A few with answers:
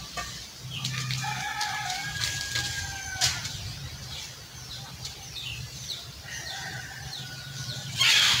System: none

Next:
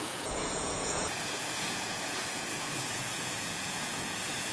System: vocoder, Vocos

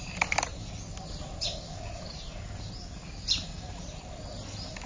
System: none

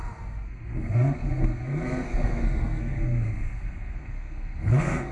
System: codec, SNAC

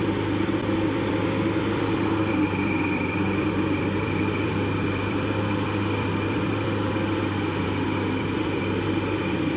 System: vocoder, BigVGAN v2